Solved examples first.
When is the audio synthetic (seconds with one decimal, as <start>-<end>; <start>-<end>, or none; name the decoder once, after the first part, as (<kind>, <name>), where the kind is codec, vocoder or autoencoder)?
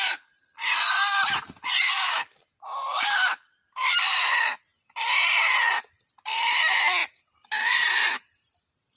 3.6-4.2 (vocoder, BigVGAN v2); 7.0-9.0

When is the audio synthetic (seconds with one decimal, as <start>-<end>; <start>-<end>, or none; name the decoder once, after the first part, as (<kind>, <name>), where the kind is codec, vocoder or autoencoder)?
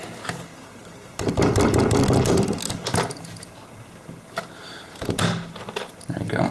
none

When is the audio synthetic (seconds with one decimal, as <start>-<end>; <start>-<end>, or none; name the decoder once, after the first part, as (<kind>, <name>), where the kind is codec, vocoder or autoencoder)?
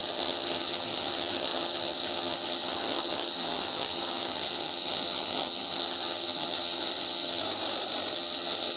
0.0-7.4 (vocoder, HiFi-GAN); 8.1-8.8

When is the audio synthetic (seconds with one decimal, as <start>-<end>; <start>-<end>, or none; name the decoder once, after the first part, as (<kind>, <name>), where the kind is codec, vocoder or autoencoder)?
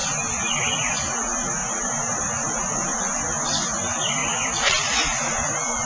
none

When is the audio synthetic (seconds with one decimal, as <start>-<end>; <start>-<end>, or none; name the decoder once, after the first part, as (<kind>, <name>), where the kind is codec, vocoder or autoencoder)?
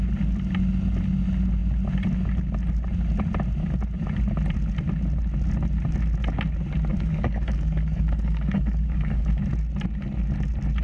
6.9-9.4 (codec, DAC)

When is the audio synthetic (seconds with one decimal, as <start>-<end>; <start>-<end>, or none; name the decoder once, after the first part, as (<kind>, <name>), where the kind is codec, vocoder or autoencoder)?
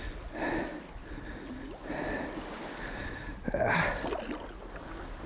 none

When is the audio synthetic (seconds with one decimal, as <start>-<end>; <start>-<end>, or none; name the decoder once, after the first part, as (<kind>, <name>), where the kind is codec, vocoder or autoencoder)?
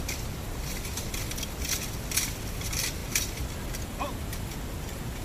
none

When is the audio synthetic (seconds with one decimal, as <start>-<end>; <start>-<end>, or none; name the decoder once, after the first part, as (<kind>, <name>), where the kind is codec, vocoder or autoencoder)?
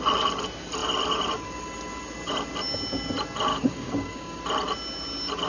3.5-4.4 (codec, DAC)